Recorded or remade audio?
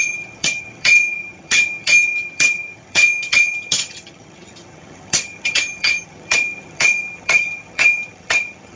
remade